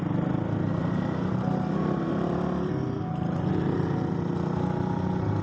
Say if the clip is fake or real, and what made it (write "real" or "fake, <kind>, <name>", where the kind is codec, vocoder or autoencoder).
real